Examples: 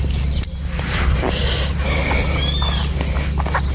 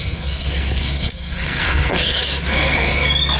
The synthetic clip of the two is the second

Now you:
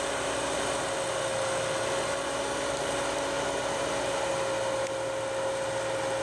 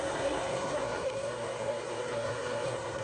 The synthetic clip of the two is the second